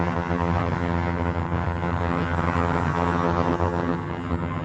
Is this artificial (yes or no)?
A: yes